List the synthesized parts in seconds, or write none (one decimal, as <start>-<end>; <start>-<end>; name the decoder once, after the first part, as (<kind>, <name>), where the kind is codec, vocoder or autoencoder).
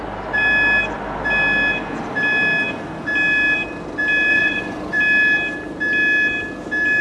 4.3-5.0 (vocoder, Vocos)